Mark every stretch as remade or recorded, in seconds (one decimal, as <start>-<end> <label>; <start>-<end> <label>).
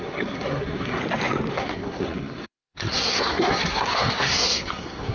0.0-1.0 remade; 1.0-1.5 recorded; 1.5-5.1 remade